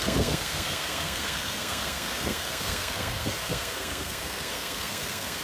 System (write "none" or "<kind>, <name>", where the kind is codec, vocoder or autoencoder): codec, SNAC